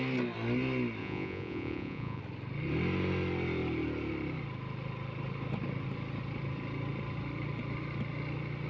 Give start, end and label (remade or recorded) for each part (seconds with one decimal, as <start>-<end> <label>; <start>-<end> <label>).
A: 0.0-1.0 recorded; 1.0-2.2 remade; 2.2-8.7 recorded